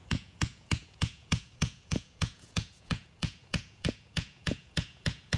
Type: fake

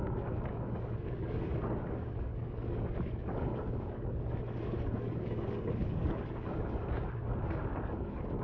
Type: fake